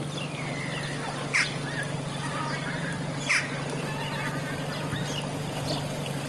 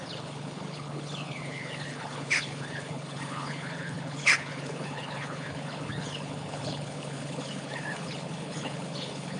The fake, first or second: second